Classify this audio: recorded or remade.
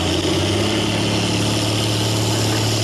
recorded